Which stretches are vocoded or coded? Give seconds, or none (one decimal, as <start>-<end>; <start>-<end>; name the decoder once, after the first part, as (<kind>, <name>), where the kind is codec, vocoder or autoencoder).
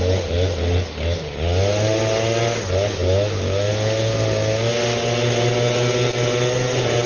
none